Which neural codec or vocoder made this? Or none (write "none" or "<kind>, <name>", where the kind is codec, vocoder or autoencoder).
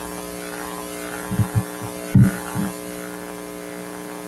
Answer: none